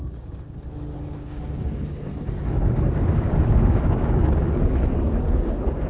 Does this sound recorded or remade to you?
remade